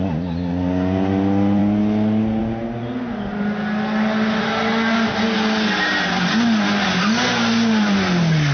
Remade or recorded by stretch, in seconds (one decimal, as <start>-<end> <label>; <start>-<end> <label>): 0.0-8.5 recorded